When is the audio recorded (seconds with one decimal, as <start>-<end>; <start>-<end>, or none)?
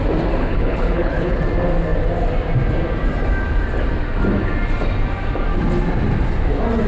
0.0-0.4; 1.4-6.9